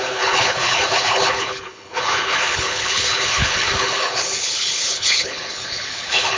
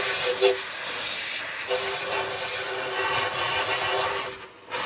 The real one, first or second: second